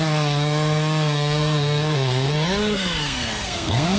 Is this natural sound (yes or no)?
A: no